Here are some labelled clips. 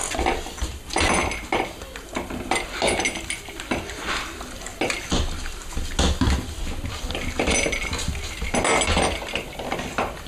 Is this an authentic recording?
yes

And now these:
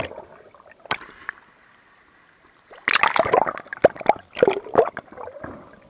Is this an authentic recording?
yes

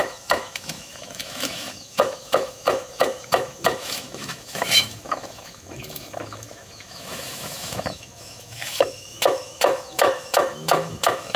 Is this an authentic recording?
no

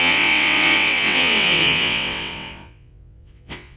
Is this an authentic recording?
no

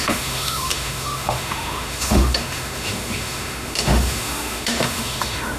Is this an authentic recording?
no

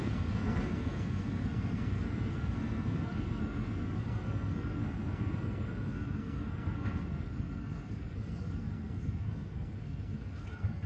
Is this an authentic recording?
no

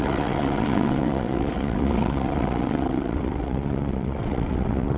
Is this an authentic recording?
no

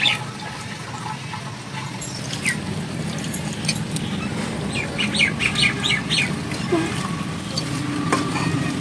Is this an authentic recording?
yes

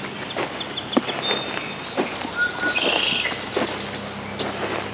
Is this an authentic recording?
yes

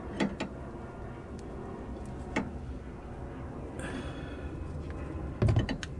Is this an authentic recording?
yes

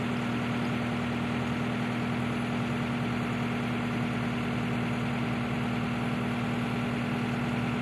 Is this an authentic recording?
yes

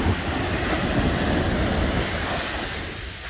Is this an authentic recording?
yes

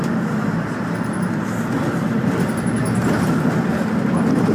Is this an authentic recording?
yes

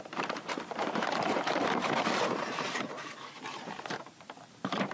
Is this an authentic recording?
no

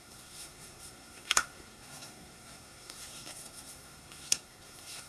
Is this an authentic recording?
no